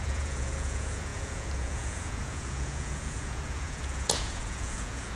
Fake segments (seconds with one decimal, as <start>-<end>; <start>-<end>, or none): 0.0-5.2